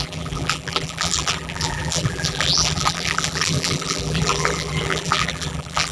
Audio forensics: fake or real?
fake